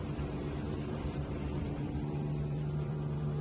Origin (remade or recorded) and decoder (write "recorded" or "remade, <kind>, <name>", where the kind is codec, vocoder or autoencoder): remade, vocoder, BigVGAN v2